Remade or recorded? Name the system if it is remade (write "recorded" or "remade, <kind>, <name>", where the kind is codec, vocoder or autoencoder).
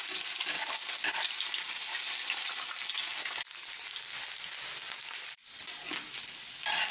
recorded